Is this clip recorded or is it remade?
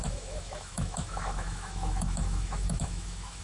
remade